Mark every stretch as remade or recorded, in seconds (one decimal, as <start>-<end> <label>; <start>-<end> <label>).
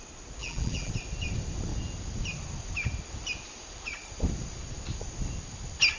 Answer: 0.0-0.4 recorded; 0.4-0.9 remade; 0.9-6.0 recorded